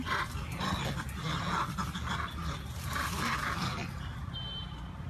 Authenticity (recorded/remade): recorded